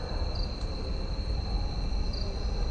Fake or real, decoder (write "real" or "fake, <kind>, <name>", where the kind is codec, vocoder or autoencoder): real